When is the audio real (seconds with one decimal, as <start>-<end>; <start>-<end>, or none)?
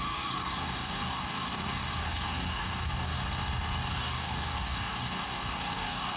3.2-3.9